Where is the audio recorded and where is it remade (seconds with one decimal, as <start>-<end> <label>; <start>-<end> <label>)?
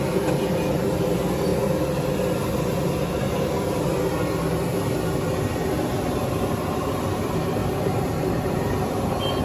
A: 0.0-7.6 recorded; 7.6-9.4 remade